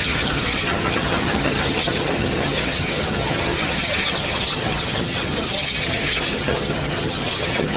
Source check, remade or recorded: remade